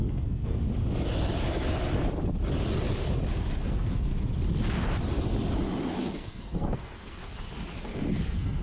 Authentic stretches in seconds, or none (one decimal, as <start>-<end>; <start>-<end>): 0.6-3.6; 4.1-6.0; 7.2-8.2